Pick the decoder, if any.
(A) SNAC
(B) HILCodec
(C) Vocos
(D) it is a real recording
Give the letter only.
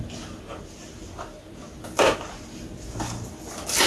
D